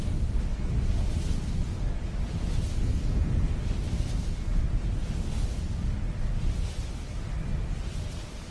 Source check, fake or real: real